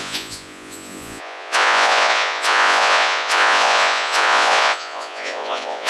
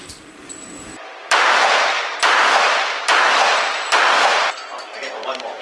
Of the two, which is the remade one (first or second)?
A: first